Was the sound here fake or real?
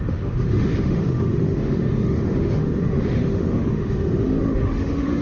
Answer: fake